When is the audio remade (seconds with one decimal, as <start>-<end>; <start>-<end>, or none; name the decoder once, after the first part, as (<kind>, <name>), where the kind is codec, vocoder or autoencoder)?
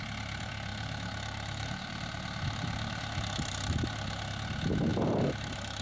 0.7-4.2 (vocoder, BigVGAN v2); 4.9-5.8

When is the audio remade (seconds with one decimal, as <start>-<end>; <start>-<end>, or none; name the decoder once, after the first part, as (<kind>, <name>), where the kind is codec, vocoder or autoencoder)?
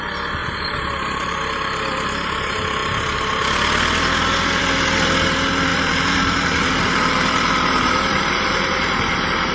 0.4-1.4 (vocoder, BigVGAN v2); 5.7-9.5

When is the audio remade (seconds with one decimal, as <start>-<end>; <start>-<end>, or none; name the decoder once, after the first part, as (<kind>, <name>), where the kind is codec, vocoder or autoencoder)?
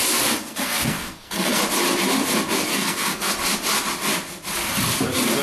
0.4-1.6 (codec, SNAC); 2.7-3.3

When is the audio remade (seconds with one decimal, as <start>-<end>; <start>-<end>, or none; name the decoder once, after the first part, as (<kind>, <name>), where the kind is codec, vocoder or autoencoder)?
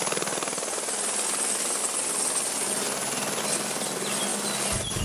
none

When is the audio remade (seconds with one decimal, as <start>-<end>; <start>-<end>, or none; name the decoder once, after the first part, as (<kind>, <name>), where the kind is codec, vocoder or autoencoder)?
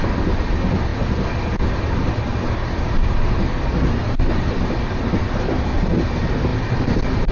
none